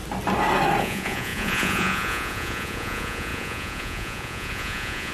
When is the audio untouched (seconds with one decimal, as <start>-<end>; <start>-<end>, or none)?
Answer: 0.0-0.8